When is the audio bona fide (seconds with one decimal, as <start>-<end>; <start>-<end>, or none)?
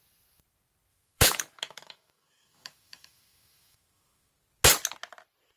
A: 0.0-0.9; 4.3-5.6